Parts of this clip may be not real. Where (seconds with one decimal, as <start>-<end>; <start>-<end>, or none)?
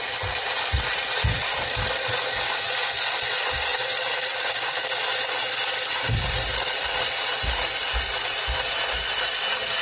none